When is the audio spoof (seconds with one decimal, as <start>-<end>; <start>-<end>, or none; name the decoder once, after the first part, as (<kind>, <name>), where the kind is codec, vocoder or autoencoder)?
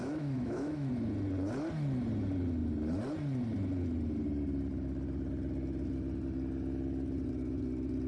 0.0-0.9 (autoencoder, DAC-VAE)